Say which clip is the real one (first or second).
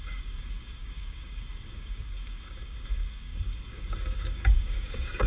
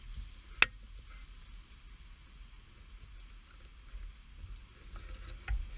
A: second